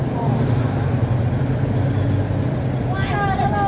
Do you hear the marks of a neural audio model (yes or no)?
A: no